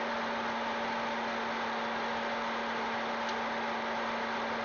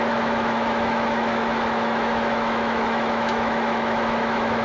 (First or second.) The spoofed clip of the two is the second